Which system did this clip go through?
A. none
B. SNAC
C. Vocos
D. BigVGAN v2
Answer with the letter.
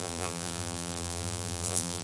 D